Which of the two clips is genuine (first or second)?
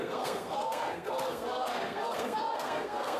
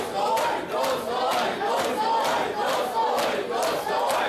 second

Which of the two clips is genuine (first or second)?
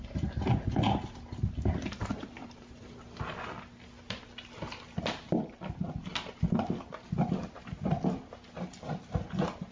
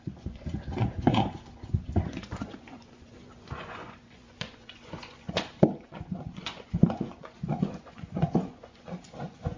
first